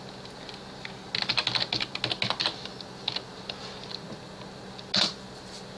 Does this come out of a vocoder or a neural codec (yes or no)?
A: no